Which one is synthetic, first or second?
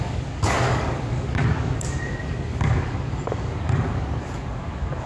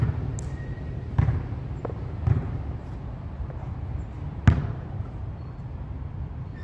first